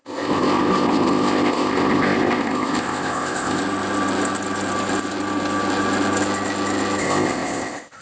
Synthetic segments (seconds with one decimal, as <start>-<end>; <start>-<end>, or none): 0.0-3.6; 7.0-8.0